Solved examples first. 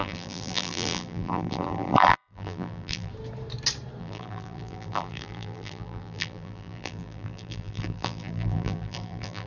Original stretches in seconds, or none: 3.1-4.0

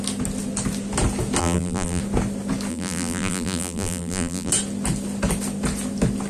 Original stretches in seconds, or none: 0.0-1.4; 2.0-2.7; 4.5-6.3

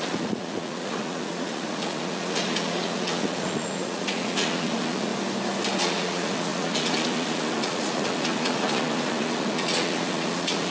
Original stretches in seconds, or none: 5.1-5.8

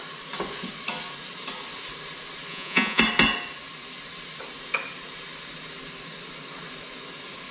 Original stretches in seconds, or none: 0.0-2.5; 3.0-7.5

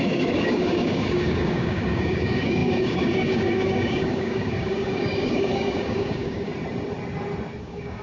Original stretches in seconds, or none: 6.5-7.6